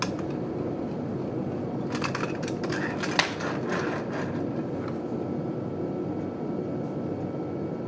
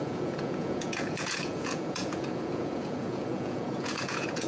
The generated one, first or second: second